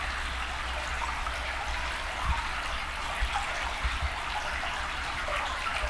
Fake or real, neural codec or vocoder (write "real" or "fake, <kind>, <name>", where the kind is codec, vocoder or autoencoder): real